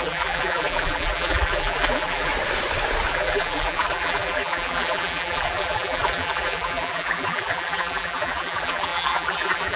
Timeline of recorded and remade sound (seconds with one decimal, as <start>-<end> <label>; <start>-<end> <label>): 0.0-2.3 remade; 2.3-3.1 recorded; 3.1-9.8 remade

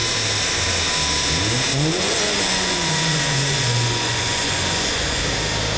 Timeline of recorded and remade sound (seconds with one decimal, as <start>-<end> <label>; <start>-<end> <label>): 0.0-1.7 recorded; 1.7-5.2 remade; 5.2-5.8 recorded

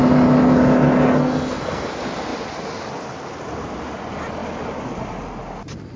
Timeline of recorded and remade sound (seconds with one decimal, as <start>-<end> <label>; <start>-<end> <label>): 0.0-1.2 recorded; 1.2-1.9 remade; 1.9-6.0 recorded

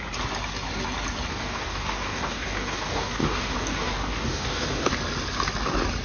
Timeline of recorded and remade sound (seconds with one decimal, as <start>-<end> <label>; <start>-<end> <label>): 0.0-1.3 recorded; 1.3-4.9 remade; 4.9-6.0 recorded